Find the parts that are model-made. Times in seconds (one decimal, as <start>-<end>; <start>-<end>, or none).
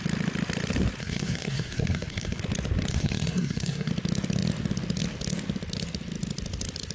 1.0-2.4; 2.9-3.9